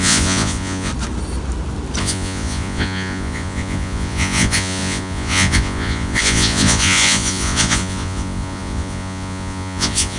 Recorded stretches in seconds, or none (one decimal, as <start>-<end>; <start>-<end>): 0.9-2.0